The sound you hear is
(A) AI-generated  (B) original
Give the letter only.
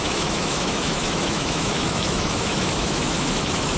A